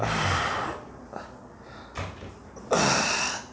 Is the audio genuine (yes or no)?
yes